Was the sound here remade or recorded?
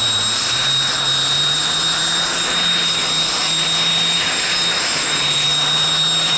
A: recorded